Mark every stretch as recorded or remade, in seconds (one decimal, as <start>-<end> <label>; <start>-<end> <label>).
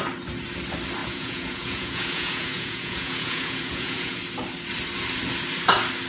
0.0-1.0 recorded; 1.0-4.2 remade; 4.2-6.1 recorded